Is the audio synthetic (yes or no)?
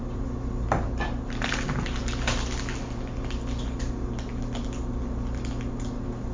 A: no